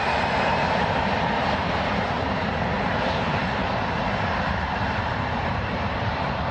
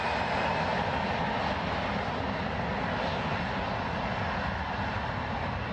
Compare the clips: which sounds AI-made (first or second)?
first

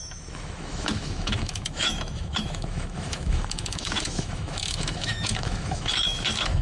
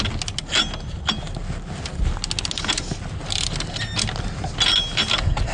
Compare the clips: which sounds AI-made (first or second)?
first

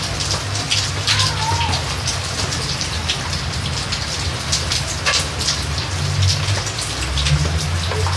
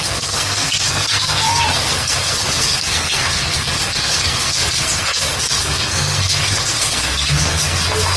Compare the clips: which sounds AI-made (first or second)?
second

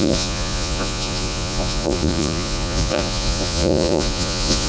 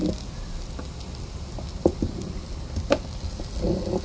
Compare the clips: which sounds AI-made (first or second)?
first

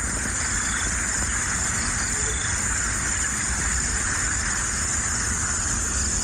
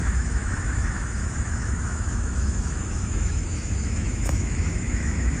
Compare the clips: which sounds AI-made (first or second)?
second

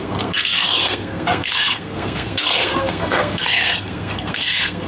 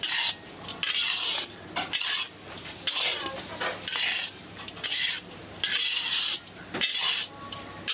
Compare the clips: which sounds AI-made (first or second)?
first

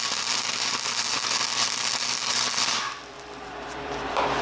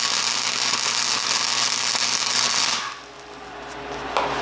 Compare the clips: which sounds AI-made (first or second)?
first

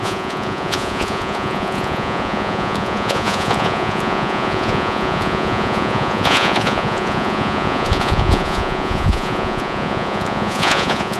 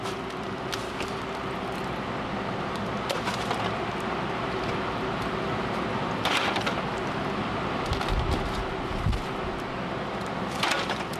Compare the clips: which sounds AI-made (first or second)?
first